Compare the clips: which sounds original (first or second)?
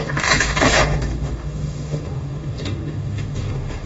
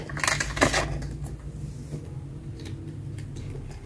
second